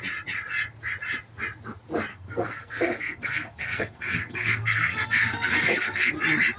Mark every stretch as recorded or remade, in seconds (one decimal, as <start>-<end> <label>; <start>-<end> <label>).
0.0-2.1 recorded; 2.1-6.1 remade; 6.1-6.6 recorded